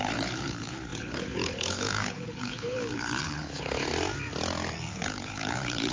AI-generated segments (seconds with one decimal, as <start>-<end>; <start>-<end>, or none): 0.0-3.9; 4.9-5.9

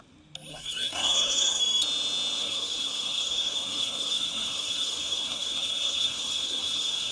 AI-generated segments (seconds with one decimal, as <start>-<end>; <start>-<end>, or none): 0.5-1.6; 2.4-7.1

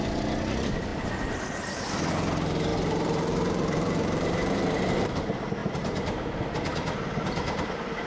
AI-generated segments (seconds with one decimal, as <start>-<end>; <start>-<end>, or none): 2.7-5.1

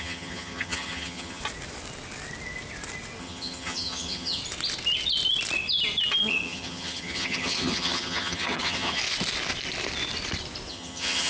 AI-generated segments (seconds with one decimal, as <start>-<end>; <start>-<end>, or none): 0.0-1.4; 3.2-4.4; 6.3-9.0; 10.7-11.3

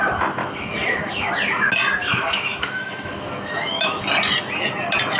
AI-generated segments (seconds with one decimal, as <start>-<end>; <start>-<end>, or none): 0.4-1.3; 2.0-4.0

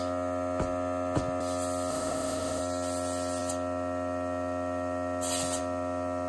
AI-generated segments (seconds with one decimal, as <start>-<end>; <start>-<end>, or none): 1.9-2.6

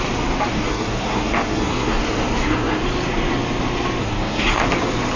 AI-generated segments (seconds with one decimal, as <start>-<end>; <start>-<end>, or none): 0.5-2.8; 4.0-4.6

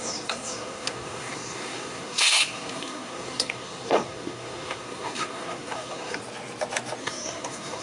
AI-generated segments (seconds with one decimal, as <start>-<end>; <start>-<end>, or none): 0.0-6.2; 7.0-7.8